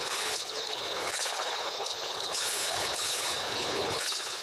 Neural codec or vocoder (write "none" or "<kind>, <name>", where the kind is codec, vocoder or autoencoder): codec, HILCodec